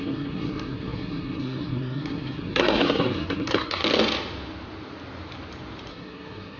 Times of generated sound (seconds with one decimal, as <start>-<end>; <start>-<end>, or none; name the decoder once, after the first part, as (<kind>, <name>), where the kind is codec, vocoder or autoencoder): 0.0-3.8 (codec, SNAC); 5.9-6.6